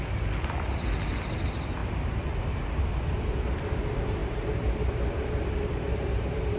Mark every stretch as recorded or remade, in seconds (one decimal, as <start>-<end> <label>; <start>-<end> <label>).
0.0-1.8 recorded; 1.8-2.8 remade; 2.8-4.2 recorded; 4.2-6.6 remade